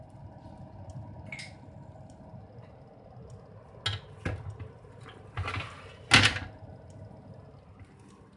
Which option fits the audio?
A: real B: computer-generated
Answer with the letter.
A